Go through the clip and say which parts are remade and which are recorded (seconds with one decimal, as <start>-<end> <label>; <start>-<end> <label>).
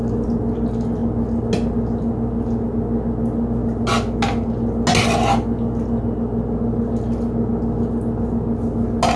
0.0-9.2 recorded